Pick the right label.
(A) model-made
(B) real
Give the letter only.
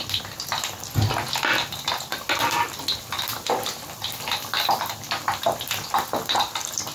B